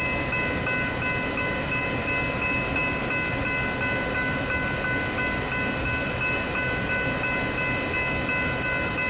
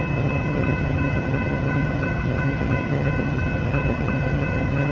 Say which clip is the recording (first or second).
first